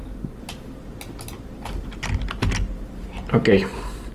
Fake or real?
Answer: real